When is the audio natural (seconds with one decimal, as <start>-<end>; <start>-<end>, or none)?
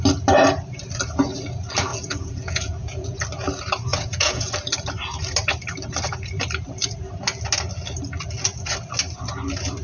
0.0-1.9; 3.2-3.9; 4.5-9.8